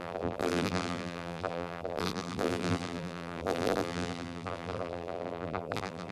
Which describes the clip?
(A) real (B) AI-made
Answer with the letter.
B